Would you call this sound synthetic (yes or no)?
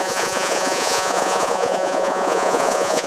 yes